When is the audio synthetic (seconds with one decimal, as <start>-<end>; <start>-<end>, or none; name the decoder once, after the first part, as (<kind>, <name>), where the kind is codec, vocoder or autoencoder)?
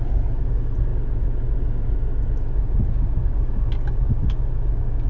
none